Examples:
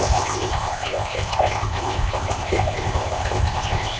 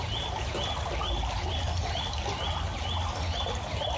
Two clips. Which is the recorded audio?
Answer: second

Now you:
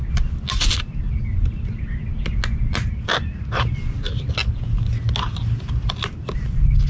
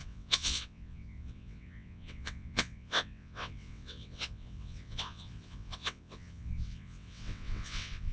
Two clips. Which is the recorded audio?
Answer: first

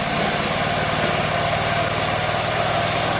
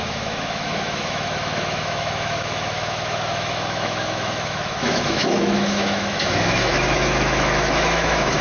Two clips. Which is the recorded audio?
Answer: first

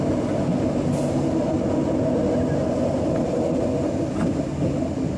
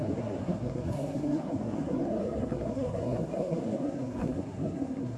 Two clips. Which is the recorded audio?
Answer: first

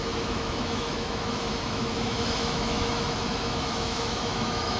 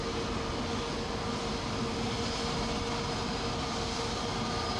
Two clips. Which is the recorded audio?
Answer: second